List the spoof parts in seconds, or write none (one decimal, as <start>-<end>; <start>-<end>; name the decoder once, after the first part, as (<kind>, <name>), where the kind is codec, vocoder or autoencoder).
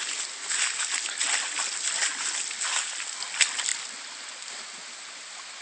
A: none